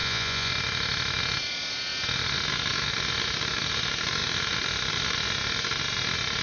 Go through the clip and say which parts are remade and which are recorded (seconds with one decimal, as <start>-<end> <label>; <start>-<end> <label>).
0.0-0.5 remade; 0.5-6.4 recorded